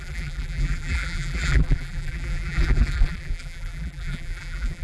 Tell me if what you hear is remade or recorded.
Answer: remade